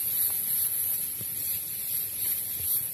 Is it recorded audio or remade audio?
remade